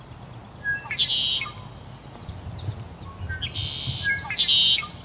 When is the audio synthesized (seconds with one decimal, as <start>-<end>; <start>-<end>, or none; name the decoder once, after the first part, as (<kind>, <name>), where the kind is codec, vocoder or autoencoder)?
none